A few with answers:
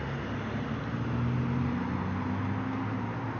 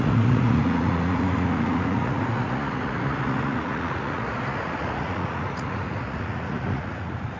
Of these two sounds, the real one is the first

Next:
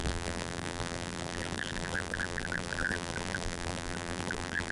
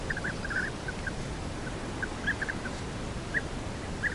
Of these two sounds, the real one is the second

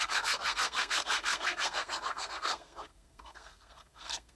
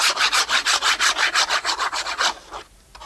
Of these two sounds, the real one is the second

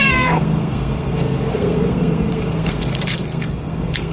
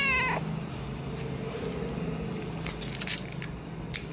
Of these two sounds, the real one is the second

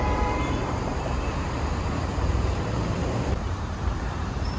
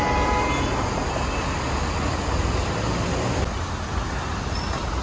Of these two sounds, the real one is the second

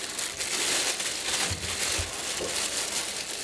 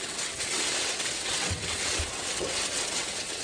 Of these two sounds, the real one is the first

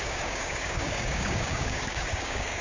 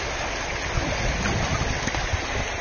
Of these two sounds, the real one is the second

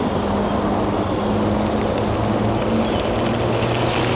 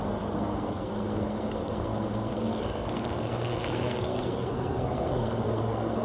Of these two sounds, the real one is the first